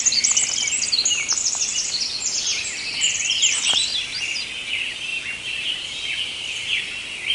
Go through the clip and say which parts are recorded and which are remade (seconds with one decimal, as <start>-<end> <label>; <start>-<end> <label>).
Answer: 0.0-7.3 recorded